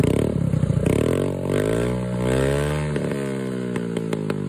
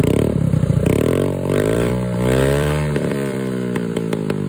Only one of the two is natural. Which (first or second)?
first